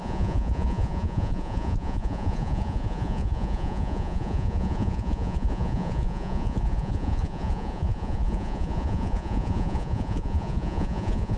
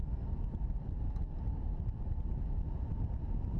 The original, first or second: second